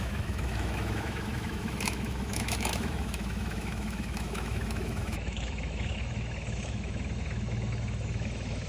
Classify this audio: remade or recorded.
remade